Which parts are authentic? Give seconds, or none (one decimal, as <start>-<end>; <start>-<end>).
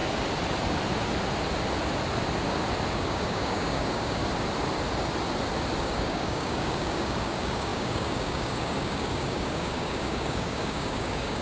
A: 0.0-2.9; 4.2-5.8